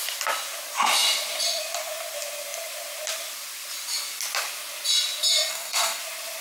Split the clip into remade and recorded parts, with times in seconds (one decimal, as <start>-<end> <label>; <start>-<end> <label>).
0.0-5.5 recorded; 5.5-6.0 remade; 6.0-6.4 recorded